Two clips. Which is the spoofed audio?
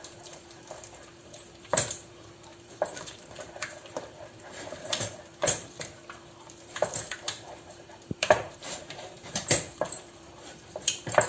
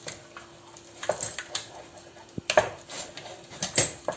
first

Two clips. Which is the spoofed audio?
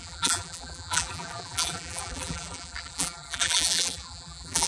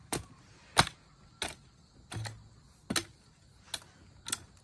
first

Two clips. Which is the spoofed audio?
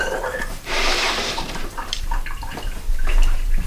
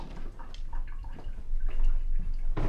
first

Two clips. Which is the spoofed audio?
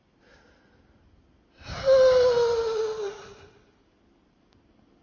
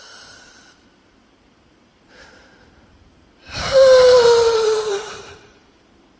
second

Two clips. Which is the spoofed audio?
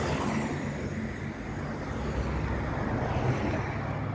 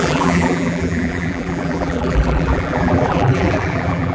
second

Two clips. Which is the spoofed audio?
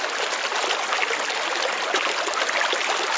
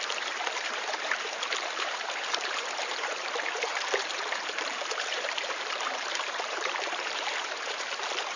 second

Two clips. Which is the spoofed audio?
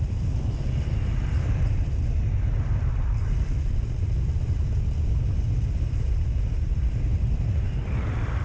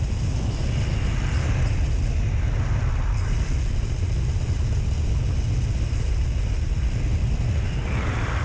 first